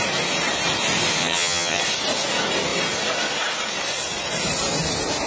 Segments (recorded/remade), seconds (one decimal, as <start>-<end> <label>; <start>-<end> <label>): 0.0-1.2 recorded; 1.2-1.8 remade; 1.8-5.3 recorded